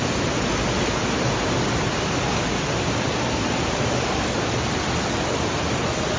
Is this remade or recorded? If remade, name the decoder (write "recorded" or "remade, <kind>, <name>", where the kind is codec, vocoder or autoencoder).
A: recorded